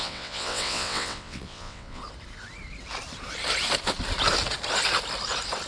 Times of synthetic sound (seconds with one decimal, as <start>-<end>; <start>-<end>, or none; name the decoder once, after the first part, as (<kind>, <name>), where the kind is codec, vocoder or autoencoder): 0.0-2.0 (vocoder, WaveNeXt)